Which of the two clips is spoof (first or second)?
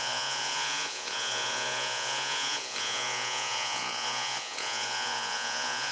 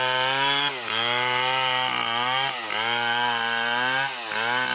first